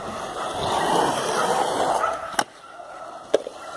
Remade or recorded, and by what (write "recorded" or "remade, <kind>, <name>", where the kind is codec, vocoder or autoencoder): recorded